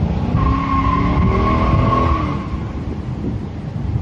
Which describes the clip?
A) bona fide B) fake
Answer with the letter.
A